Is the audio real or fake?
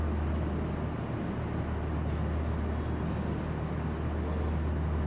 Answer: real